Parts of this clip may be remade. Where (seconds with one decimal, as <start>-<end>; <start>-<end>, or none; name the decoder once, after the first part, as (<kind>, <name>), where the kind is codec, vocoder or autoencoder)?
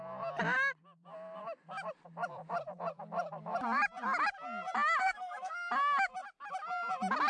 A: 5.0-5.7 (codec, SNAC)